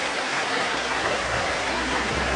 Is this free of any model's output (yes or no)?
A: no